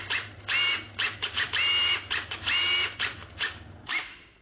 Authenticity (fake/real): fake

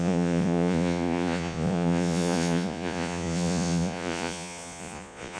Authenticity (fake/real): fake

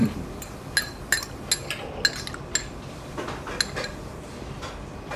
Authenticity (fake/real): real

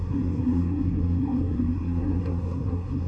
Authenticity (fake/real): fake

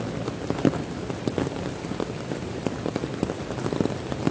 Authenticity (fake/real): real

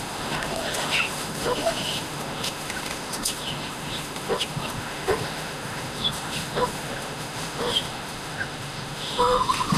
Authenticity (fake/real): fake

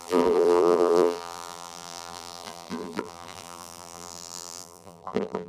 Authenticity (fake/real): fake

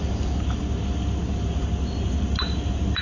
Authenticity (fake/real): real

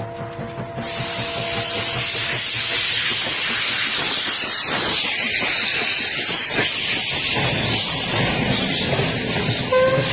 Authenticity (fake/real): real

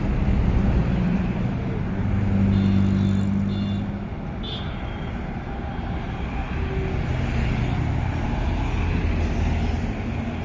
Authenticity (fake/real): real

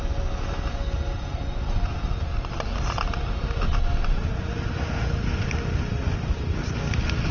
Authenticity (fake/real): real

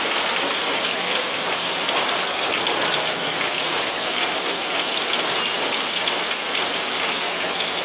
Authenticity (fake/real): real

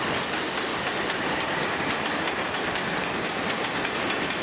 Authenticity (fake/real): real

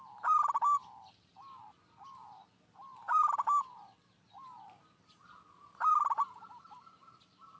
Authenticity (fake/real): real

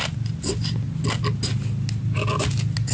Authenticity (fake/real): real